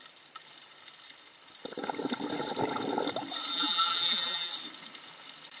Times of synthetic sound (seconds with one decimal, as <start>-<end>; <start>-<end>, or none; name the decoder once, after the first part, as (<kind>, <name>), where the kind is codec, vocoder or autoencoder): 3.5-4.5 (vocoder, BigVGAN v2)